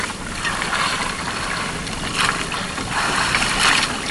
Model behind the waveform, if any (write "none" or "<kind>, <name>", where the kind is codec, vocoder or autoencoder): none